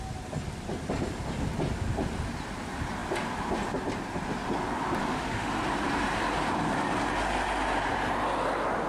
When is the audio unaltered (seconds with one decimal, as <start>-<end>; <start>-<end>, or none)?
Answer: 0.0-5.0; 5.5-8.9

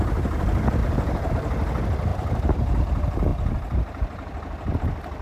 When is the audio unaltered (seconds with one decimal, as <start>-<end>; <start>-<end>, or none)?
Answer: 0.0-0.8; 1.3-5.2